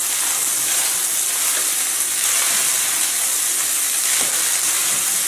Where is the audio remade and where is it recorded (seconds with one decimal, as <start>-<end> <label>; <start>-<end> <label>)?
0.0-5.3 recorded

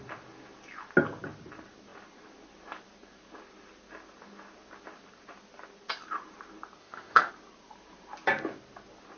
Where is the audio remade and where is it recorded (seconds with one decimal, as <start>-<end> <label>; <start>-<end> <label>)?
0.0-6.8 recorded; 6.8-7.3 remade; 7.3-9.2 recorded

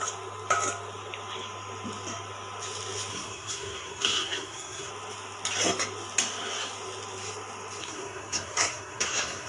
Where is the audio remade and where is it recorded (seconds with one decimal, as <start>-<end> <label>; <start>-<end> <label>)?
0.0-3.1 recorded; 3.1-4.9 remade; 4.9-7.8 recorded; 7.8-9.5 remade

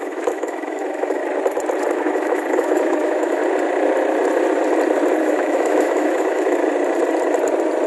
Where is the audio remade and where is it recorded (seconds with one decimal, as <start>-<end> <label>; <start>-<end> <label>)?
0.0-1.2 remade; 1.2-1.9 recorded; 1.9-3.4 remade; 3.4-5.2 recorded; 5.2-6.6 remade; 6.6-7.9 recorded

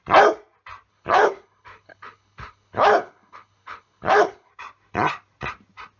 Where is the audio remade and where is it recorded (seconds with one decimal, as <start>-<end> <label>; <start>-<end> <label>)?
0.0-0.9 recorded; 0.9-4.5 remade; 4.5-6.0 recorded

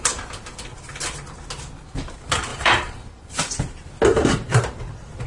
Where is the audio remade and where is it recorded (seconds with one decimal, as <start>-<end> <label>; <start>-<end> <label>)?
0.0-2.5 recorded; 2.5-3.5 remade; 3.5-4.1 recorded; 4.1-5.3 remade

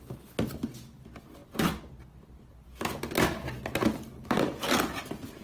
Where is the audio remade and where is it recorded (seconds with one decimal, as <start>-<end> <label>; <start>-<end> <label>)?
0.0-5.4 recorded